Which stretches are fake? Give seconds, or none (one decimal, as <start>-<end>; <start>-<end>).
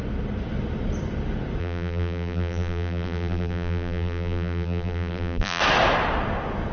1.6-5.6